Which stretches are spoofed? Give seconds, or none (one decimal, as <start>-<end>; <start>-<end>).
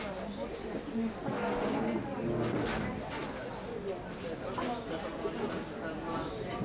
none